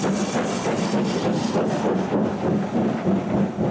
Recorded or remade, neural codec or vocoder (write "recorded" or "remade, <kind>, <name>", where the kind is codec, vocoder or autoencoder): recorded